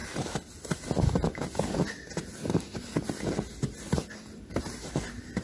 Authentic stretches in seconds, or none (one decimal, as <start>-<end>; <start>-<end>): 0.0-5.4